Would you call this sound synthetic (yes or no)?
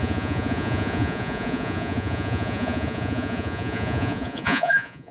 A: yes